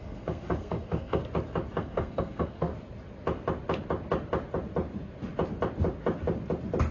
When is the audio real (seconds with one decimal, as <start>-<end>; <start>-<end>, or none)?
1.2-1.8; 2.7-6.9